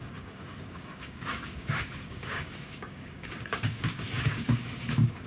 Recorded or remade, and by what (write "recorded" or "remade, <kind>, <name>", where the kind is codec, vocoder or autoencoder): remade, codec, DAC